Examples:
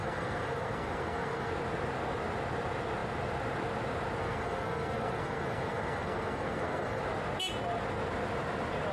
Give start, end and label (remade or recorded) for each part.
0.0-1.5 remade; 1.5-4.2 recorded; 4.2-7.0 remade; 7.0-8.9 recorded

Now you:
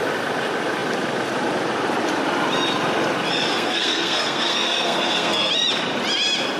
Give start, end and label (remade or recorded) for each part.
0.0-3.5 recorded; 3.5-5.5 remade; 5.5-6.6 recorded

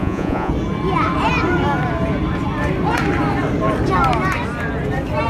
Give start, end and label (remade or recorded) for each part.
0.0-0.5 remade; 0.5-5.3 recorded

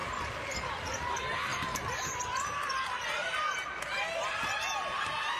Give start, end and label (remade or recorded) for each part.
0.0-5.4 recorded

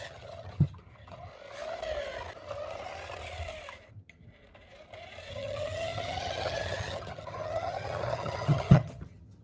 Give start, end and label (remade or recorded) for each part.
0.0-1.3 remade; 1.3-3.9 recorded; 3.9-4.3 remade; 4.3-5.3 recorded; 5.3-9.4 remade

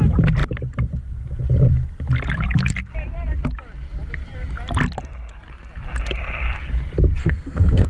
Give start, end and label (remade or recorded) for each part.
0.0-7.2 recorded; 7.2-7.9 remade

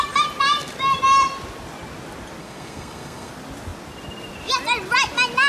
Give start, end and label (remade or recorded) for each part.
0.0-2.4 recorded; 2.4-3.3 remade; 3.3-5.5 recorded